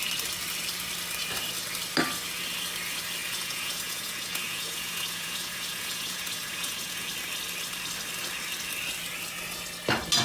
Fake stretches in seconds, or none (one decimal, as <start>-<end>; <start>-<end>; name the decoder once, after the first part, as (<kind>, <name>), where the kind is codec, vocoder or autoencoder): 3.2-7.1 (vocoder, Vocos)